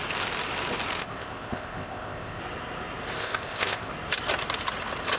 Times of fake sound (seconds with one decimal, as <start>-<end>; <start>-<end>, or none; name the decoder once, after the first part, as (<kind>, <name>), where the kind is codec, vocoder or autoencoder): 1.0-2.4 (codec, ZipCodec); 3.2-3.9